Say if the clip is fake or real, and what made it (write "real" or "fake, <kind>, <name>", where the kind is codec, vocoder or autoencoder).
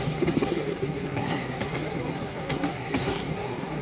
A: fake, codec, SNAC